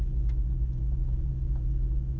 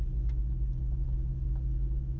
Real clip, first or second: second